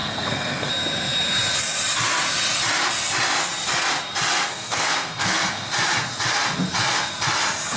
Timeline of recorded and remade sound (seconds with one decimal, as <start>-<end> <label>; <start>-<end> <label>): 0.0-0.7 remade; 0.7-4.5 recorded; 4.5-5.7 remade; 5.7-7.8 recorded

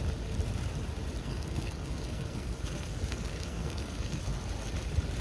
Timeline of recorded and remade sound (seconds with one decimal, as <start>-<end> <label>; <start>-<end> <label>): 0.0-1.2 recorded; 1.2-4.2 remade; 4.2-5.2 recorded

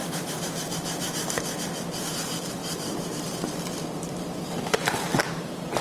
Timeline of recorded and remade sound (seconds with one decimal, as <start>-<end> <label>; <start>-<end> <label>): 0.0-1.1 remade; 1.1-2.6 recorded; 2.6-4.4 remade; 4.4-5.8 recorded